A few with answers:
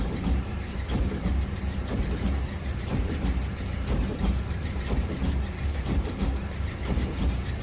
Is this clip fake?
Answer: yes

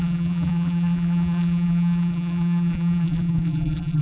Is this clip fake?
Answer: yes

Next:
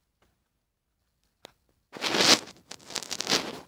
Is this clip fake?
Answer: no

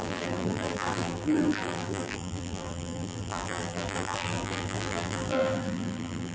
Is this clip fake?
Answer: yes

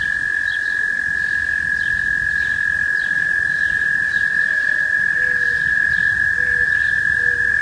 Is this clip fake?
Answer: no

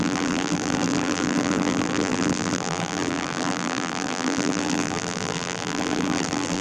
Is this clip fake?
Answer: yes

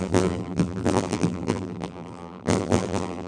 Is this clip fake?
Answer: yes